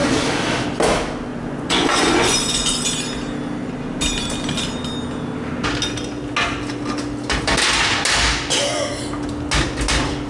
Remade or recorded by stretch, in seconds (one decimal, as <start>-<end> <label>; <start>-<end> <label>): 0.0-1.3 recorded; 1.3-2.8 remade; 2.8-10.3 recorded